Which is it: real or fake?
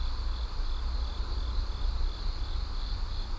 real